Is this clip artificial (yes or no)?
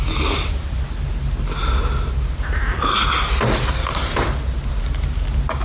no